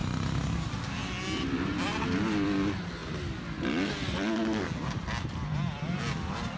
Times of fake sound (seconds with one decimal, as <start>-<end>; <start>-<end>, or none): none